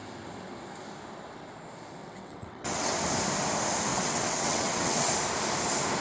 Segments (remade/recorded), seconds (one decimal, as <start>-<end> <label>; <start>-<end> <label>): 0.0-2.0 recorded; 2.0-2.9 remade; 2.9-3.9 recorded; 3.9-5.1 remade; 5.1-6.0 recorded